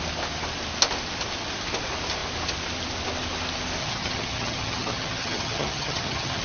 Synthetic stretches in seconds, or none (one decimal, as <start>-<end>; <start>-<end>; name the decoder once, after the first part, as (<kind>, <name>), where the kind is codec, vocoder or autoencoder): 3.8-6.4 (vocoder, HiFi-GAN)